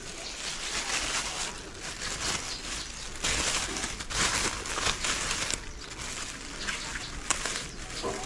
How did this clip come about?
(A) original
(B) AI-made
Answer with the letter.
A